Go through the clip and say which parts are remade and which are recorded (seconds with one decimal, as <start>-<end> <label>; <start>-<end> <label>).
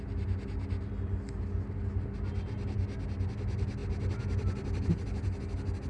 0.0-5.9 recorded